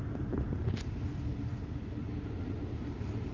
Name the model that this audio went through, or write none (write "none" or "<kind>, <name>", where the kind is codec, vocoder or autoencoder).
none